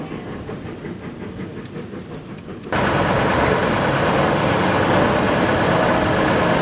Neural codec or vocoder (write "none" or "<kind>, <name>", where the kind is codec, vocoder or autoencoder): none